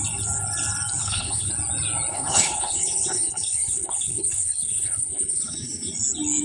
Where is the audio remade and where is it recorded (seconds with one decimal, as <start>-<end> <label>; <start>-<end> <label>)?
0.0-1.0 recorded; 1.0-1.5 remade; 1.5-2.1 recorded; 2.1-5.9 remade; 5.9-6.4 recorded